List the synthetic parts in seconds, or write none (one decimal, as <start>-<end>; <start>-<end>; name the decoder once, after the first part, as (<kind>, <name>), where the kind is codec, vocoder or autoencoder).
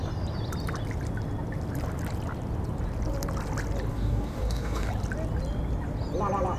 3.9-4.9 (codec, DAC)